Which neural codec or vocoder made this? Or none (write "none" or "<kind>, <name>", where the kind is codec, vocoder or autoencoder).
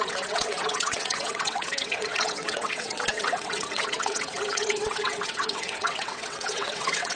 vocoder, WaveNeXt